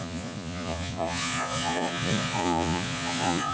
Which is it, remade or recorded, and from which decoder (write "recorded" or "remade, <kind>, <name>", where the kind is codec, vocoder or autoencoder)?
remade, vocoder, Vocos